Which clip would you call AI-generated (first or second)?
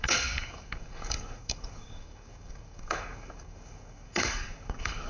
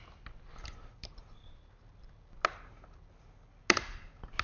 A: first